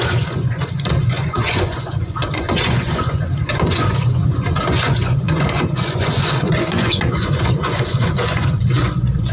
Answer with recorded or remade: remade